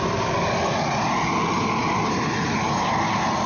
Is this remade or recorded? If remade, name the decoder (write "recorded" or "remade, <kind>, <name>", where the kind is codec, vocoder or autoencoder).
recorded